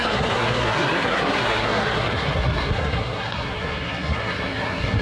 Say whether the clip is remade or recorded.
remade